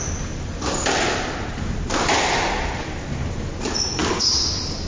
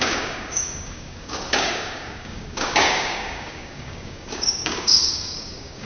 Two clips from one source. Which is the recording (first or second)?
first